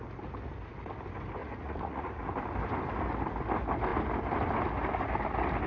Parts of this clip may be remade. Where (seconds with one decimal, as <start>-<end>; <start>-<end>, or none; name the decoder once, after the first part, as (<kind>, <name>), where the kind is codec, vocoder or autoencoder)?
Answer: 1.4-2.2 (vocoder, Vocos)